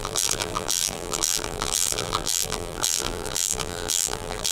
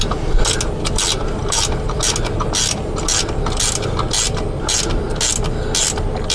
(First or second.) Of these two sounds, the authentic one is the second